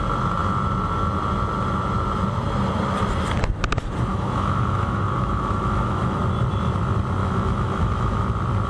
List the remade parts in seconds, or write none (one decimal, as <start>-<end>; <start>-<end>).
4.1-6.2; 7.2-8.2